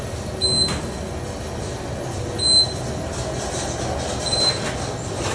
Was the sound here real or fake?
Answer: real